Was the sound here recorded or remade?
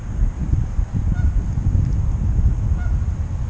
recorded